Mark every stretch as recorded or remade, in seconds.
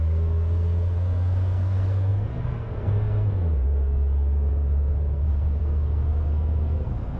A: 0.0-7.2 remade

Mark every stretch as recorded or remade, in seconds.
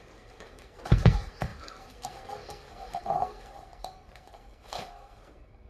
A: 0.0-5.7 remade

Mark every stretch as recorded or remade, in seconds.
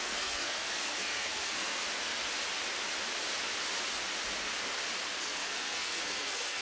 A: 0.0-1.8 remade; 1.8-5.2 recorded; 5.2-6.6 remade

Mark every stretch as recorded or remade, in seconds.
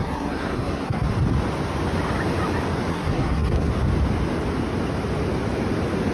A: 0.0-1.1 remade; 1.1-2.9 recorded; 2.9-3.7 remade; 3.7-6.1 recorded